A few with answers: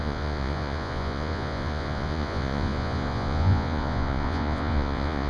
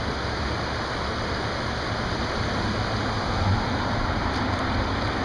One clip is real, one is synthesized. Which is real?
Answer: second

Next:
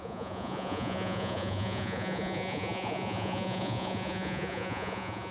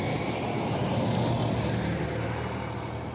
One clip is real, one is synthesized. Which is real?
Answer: second